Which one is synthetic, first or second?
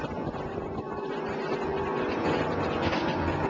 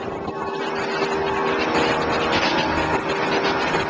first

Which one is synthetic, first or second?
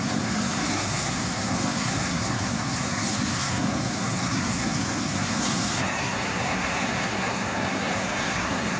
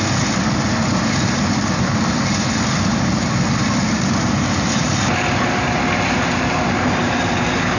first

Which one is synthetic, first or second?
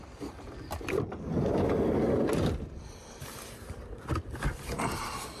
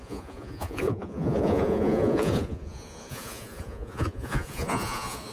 second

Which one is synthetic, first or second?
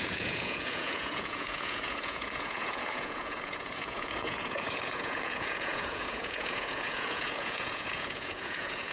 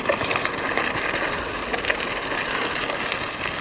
first